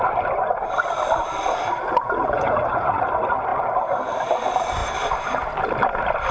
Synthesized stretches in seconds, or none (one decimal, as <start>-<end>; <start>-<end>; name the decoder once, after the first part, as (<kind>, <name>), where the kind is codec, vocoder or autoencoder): 2.2-3.1 (vocoder, Vocos)